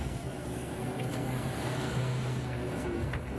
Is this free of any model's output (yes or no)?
no